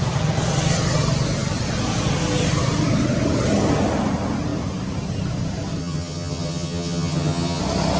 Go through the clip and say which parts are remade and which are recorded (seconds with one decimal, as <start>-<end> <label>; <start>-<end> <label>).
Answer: 0.0-5.8 recorded; 5.8-7.6 remade; 7.6-8.0 recorded